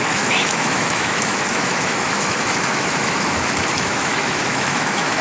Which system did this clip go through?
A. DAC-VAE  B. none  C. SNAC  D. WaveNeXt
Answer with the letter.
A